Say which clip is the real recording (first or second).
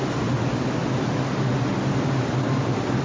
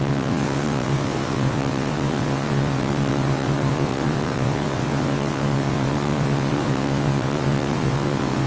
first